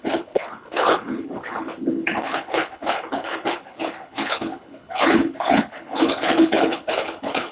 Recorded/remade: remade